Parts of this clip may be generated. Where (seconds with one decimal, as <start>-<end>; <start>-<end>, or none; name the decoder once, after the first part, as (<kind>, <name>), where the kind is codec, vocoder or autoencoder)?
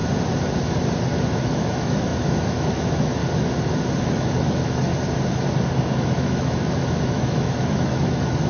1.3-3.2 (autoencoder, DAC-VAE); 4.1-4.9; 6.0-8.5